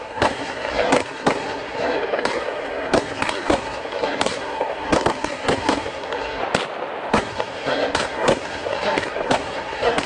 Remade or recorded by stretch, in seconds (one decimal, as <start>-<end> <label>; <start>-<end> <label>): 0.0-6.4 remade; 6.4-7.1 recorded; 7.1-10.1 remade